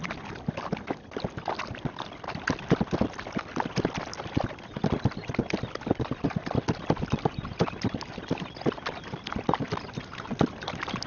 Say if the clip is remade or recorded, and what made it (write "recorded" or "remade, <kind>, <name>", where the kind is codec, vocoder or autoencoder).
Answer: recorded